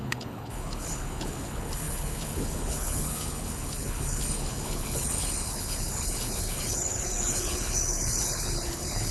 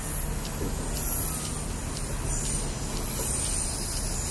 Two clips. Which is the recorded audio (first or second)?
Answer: second